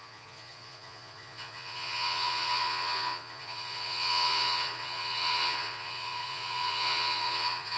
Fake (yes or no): yes